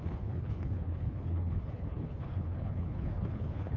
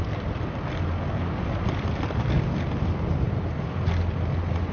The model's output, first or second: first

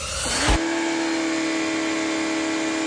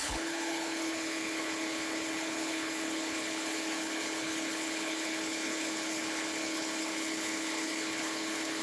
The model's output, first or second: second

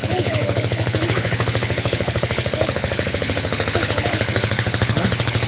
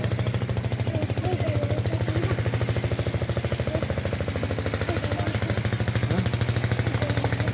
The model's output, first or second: first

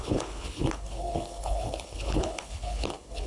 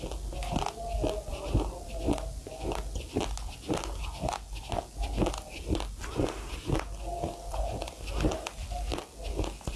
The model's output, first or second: first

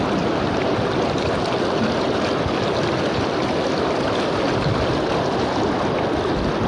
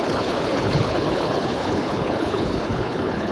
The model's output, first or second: second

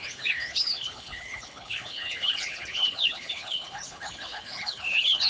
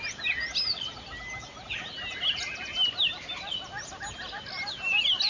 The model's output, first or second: first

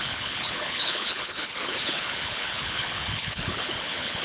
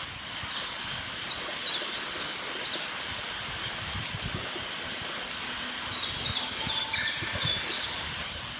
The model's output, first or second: first